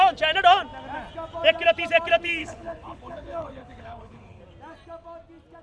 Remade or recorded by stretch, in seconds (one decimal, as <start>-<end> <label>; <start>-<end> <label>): 0.0-2.4 recorded; 2.4-4.4 remade; 4.4-5.6 recorded